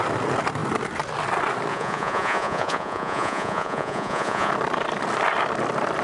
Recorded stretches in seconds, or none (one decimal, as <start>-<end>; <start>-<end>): 0.0-1.7; 4.5-6.0